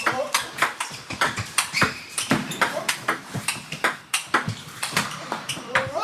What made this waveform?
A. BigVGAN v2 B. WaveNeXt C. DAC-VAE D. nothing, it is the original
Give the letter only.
A